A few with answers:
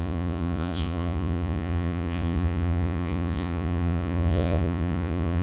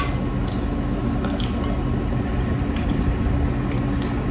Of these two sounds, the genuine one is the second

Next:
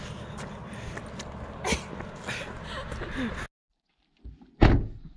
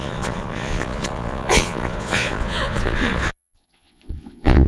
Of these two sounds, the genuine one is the first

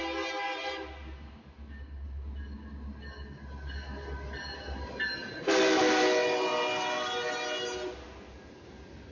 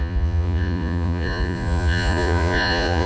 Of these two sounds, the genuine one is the first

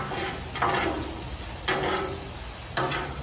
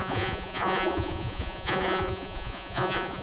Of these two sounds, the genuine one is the first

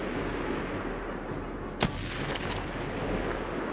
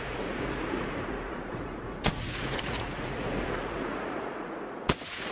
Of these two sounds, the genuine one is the first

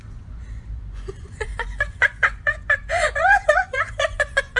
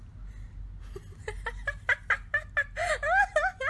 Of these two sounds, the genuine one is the second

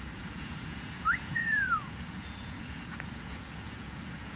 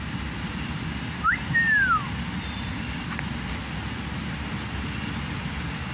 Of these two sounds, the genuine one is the second